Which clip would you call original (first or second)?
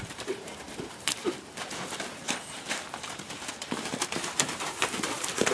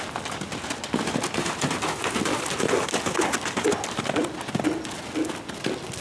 second